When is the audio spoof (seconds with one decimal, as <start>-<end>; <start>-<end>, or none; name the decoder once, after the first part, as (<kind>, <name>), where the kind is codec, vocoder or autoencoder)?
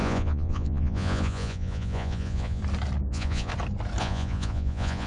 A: 0.0-2.6 (vocoder, Vocos); 3.1-3.5; 4.0-5.1